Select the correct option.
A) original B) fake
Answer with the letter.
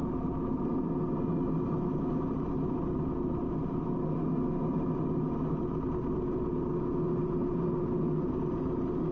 A